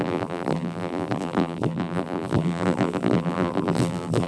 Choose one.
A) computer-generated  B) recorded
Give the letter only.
A